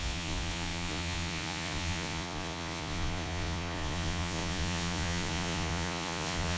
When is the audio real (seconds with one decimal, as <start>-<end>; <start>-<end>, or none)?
none